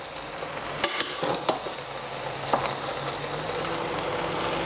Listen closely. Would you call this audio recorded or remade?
recorded